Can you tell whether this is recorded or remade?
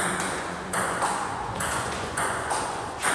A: remade